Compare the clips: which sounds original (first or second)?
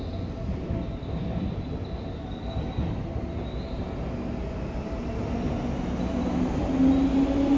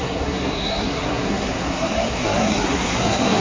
first